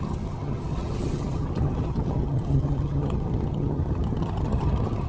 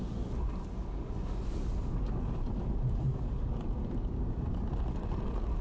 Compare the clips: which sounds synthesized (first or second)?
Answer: first